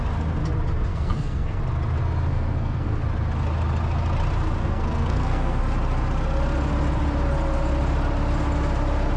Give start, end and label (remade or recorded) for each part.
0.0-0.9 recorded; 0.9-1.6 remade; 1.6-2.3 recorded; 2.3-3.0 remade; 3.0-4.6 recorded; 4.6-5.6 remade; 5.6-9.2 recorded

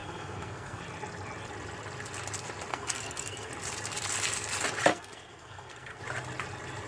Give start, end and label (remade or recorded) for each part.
0.0-0.8 remade; 0.8-2.7 recorded; 2.7-3.5 remade; 3.5-4.9 recorded; 4.9-6.0 remade; 6.0-6.9 recorded

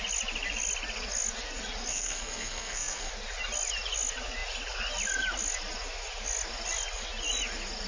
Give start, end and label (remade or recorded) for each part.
0.0-1.9 recorded; 1.9-3.1 remade; 3.1-7.9 recorded

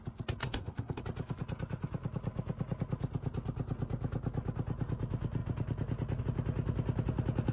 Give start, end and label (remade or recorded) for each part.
0.0-0.4 recorded; 0.4-1.0 remade; 1.0-7.5 recorded

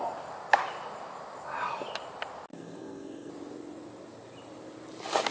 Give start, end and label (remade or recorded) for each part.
0.0-2.5 recorded; 2.5-3.3 remade; 3.3-5.3 recorded

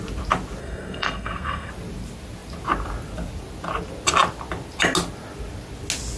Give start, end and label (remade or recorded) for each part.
0.0-0.6 recorded; 0.6-1.7 remade; 1.7-6.2 recorded

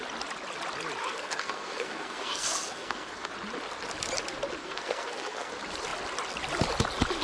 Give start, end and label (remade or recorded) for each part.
0.0-1.0 recorded; 1.0-3.3 remade; 3.3-4.6 recorded; 4.6-5.5 remade; 5.5-7.2 recorded